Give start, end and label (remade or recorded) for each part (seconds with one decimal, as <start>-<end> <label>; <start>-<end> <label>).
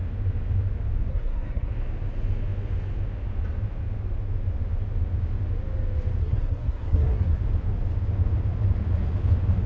0.0-1.1 recorded; 1.1-1.7 remade; 1.7-6.2 recorded; 6.2-7.4 remade; 7.4-9.7 recorded